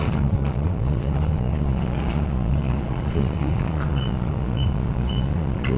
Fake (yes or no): yes